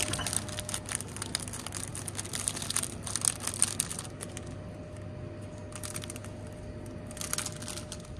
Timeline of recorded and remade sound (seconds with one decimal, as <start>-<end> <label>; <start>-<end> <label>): 0.0-8.2 recorded